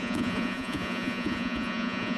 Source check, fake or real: fake